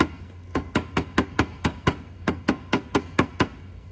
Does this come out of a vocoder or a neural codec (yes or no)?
yes